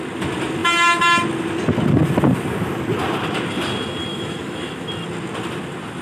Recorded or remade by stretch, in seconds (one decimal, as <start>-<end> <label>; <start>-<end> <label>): 0.0-4.1 recorded; 4.1-4.9 remade; 4.9-6.0 recorded